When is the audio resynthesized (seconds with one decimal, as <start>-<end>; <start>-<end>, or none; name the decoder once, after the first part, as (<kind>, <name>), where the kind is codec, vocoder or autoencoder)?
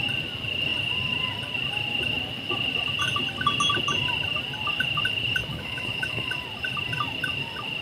5.5-6.3 (autoencoder, DAC-VAE)